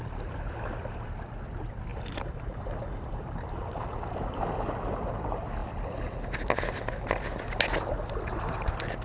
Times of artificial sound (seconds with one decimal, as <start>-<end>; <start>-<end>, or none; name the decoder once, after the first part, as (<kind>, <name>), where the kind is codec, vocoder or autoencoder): 1.9-4.4 (vocoder, BigVGAN v2)